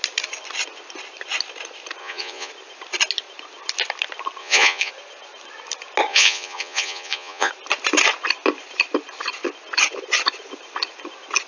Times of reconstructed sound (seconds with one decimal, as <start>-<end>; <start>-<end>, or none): 2.0-2.5; 4.4-4.9; 6.1-7.5